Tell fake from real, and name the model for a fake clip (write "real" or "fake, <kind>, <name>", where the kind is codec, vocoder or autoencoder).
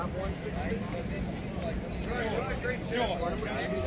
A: real